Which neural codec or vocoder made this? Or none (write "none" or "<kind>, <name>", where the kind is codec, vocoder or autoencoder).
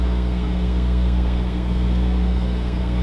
codec, SNAC